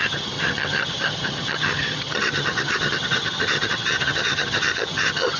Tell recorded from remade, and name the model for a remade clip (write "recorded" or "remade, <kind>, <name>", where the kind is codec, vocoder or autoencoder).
remade, vocoder, HiFi-GAN